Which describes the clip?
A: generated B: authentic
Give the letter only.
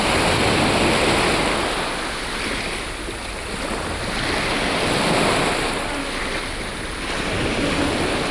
B